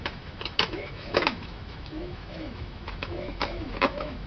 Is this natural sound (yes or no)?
no